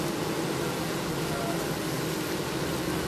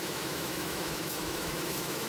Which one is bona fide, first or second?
first